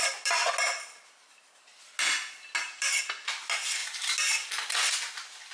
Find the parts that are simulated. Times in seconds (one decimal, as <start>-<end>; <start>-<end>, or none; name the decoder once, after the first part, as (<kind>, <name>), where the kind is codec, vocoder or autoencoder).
none